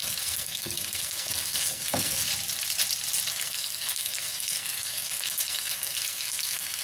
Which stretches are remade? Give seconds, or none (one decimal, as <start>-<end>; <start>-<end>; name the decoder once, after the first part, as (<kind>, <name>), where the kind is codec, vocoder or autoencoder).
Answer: 0.0-2.3 (codec, SNAC); 3.3-6.8